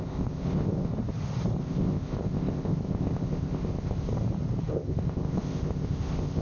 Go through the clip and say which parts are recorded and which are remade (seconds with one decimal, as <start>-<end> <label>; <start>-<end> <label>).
0.0-0.9 remade; 0.9-1.6 recorded; 1.6-4.1 remade; 4.1-4.7 recorded; 4.7-6.4 remade